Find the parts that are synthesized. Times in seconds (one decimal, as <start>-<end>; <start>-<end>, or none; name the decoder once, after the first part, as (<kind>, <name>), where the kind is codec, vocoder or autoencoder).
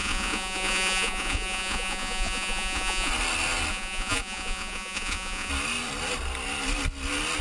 0.0-3.1 (vocoder, Vocos); 3.7-5.5